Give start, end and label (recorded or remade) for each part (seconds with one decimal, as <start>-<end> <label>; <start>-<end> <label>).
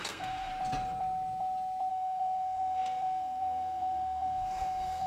0.0-0.5 remade; 0.5-1.9 recorded; 1.9-5.1 remade